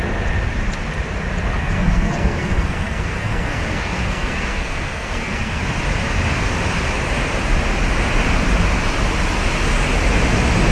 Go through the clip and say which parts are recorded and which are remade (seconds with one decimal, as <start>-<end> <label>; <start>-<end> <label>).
0.0-1.6 recorded; 1.6-5.6 remade; 5.6-10.7 recorded